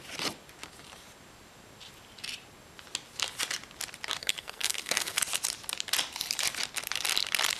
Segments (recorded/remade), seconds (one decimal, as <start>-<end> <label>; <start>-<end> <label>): 0.0-4.2 recorded; 4.2-5.2 remade; 5.2-7.6 recorded